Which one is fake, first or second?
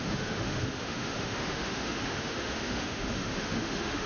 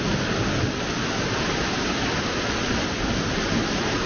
first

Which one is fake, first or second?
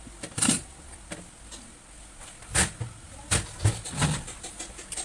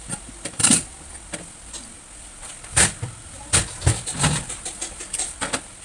second